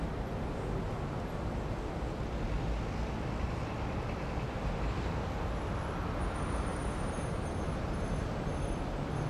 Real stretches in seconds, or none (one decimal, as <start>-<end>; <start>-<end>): 0.0-6.7; 8.5-9.3